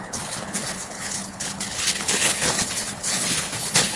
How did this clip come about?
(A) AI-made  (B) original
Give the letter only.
A